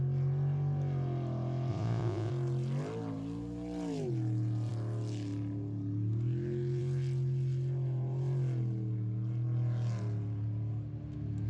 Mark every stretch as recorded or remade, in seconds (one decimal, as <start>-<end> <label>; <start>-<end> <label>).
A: 0.0-1.7 recorded; 1.7-2.3 remade; 2.3-11.5 recorded